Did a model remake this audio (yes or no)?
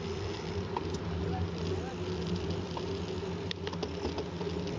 no